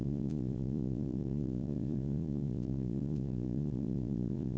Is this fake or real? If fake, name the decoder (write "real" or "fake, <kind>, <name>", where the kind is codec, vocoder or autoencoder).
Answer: fake, vocoder, Vocos